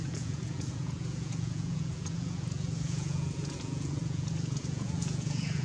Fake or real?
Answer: fake